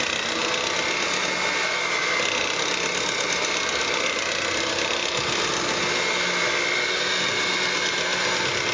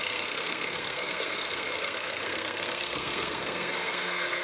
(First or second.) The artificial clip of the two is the second